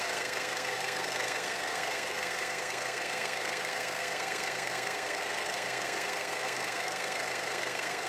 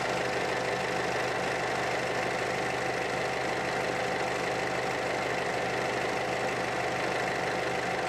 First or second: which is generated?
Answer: first